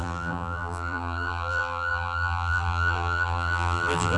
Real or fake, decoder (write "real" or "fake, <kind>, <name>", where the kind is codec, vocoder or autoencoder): fake, vocoder, BigVGAN v2